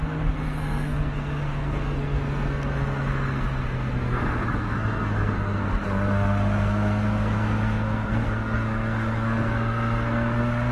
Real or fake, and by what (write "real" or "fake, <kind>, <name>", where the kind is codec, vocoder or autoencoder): fake, codec, SNAC